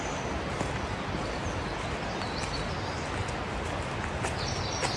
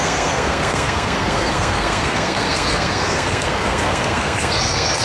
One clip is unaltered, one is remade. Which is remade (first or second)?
second